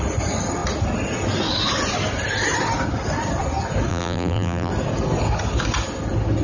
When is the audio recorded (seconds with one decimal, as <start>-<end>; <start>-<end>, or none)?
0.0-3.9; 4.7-6.4